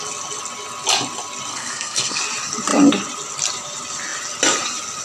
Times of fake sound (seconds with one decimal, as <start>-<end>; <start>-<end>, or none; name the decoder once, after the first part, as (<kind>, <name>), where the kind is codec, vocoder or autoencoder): 1.5-2.2 (codec, SNAC)